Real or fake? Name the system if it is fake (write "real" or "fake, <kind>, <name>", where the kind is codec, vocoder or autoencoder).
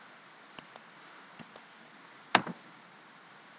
real